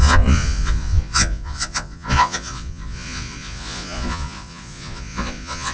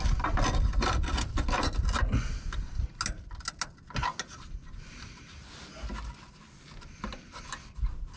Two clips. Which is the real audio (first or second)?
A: second